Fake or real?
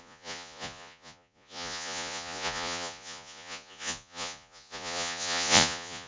fake